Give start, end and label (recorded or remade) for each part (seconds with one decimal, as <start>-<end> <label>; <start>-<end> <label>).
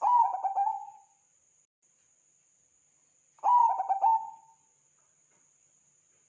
0.0-6.3 recorded